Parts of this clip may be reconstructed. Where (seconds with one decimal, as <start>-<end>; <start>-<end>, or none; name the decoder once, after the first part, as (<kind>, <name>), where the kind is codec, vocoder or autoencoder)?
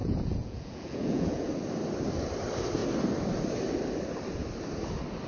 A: 0.0-1.5 (vocoder, Vocos)